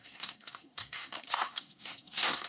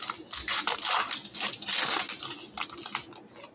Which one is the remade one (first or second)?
first